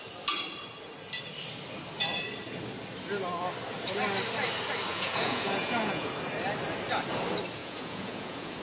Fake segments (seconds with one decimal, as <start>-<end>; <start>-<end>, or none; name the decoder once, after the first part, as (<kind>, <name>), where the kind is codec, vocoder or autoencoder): 4.9-6.1 (vocoder, Vocos); 7.6-8.6